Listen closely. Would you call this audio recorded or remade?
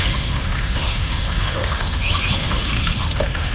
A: remade